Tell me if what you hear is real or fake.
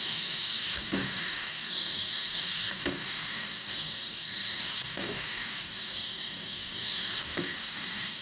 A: fake